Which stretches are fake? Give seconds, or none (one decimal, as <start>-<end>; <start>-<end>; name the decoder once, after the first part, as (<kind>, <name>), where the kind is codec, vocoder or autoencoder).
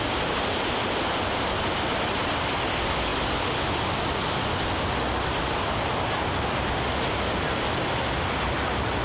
none